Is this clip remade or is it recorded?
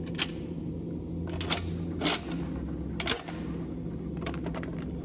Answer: recorded